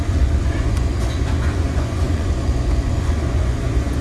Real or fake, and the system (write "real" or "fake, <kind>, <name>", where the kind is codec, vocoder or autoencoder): fake, vocoder, Vocos